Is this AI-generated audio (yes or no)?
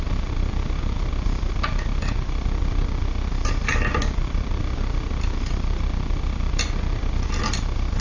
no